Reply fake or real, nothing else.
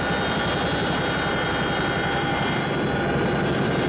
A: real